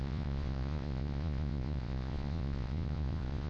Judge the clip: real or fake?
fake